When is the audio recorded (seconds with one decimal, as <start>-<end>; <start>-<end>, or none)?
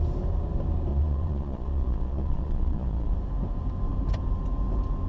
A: 0.0-0.9; 3.1-5.1